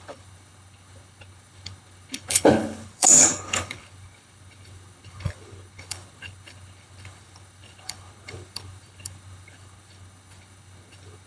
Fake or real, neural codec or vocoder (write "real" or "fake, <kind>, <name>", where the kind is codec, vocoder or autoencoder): fake, codec, HILCodec